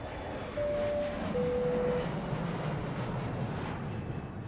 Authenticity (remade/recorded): recorded